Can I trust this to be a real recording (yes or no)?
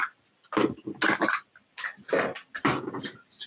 yes